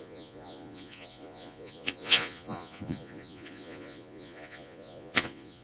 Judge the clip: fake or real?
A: fake